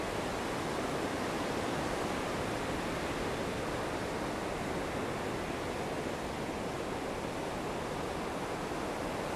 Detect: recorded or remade recorded